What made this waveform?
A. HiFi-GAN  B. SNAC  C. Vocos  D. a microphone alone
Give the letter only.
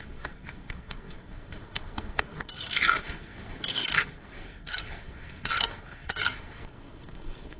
B